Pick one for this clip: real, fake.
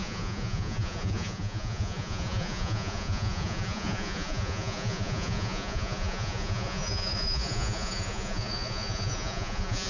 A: fake